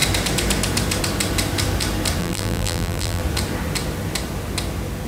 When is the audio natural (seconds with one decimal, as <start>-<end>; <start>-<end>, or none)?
0.0-2.2; 3.2-5.1